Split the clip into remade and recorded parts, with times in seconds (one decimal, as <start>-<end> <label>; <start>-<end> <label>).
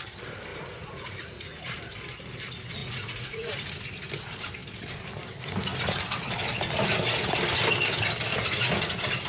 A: 0.0-0.5 recorded; 0.5-1.5 remade; 1.5-2.8 recorded; 2.8-3.5 remade; 3.5-9.3 recorded